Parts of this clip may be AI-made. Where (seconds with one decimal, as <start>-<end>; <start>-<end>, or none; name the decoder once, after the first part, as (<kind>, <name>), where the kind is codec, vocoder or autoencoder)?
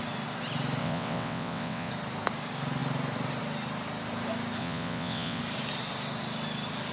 0.8-1.9 (vocoder, WaveNeXt); 4.6-5.4